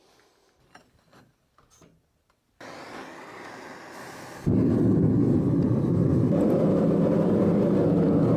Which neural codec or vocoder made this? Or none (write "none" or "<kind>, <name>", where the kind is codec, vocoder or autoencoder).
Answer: none